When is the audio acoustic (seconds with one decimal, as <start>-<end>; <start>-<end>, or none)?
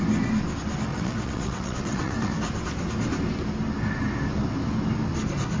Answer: 0.0-0.9; 2.3-5.6